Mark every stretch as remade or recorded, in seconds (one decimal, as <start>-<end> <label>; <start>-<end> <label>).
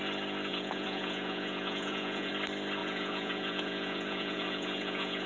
0.0-0.5 recorded; 0.5-2.3 remade; 2.3-2.8 recorded; 2.8-5.3 remade